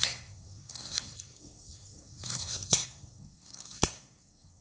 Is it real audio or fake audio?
fake